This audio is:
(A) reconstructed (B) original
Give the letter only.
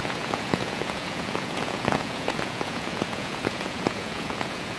A